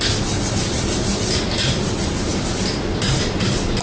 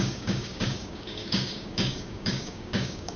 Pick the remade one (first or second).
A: second